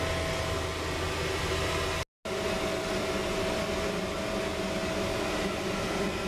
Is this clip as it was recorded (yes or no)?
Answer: yes